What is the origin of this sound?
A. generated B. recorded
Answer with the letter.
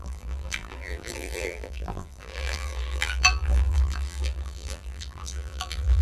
A